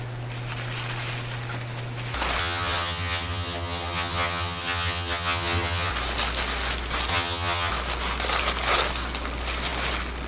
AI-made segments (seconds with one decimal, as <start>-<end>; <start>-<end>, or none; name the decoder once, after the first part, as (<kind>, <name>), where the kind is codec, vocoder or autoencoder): 2.4-5.9 (vocoder, HiFi-GAN); 7.1-7.7